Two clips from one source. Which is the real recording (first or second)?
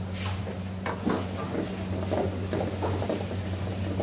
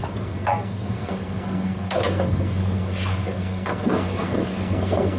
first